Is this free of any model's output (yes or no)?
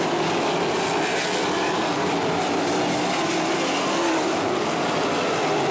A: no